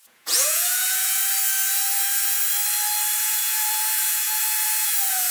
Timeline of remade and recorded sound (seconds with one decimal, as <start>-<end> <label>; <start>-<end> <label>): 0.0-1.2 remade; 1.2-1.7 recorded; 1.7-2.4 remade; 2.4-3.2 recorded; 3.2-5.3 remade